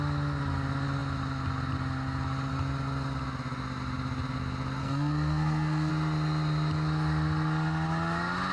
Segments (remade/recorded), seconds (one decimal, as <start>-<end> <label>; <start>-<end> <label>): 0.0-4.8 recorded; 4.8-5.9 remade; 5.9-8.5 recorded